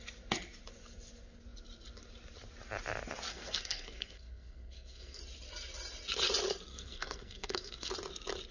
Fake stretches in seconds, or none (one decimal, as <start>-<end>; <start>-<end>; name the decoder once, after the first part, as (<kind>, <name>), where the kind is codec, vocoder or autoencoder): 3.3-5.2 (codec, SNAC); 6.7-7.9

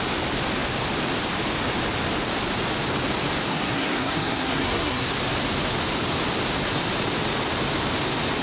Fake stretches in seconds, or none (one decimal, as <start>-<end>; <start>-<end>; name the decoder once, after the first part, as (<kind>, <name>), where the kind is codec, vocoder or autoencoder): 3.5-5.1 (codec, SNAC)

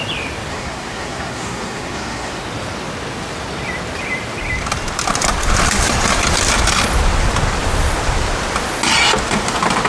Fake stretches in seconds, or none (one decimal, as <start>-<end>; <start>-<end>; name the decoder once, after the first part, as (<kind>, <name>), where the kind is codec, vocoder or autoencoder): 0.5-2.4 (codec, SNAC)

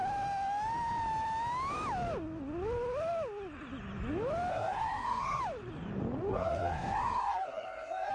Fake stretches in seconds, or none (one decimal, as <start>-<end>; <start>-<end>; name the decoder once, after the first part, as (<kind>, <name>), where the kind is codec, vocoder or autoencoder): 4.5-5.4 (codec, SNAC); 6.3-8.1